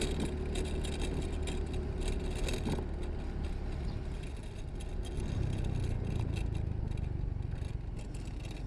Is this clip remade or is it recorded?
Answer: recorded